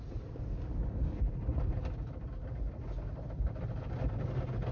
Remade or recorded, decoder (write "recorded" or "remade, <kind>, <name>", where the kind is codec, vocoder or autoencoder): remade, vocoder, BigVGAN v2